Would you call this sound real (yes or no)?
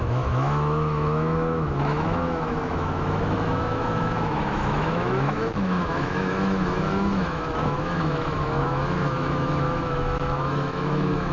no